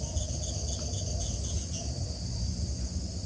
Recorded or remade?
recorded